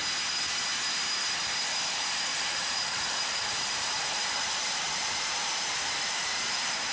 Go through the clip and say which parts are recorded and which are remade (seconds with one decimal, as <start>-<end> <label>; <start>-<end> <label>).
0.0-1.9 recorded; 1.9-6.9 remade